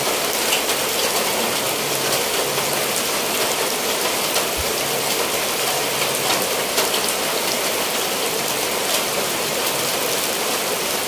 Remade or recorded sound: recorded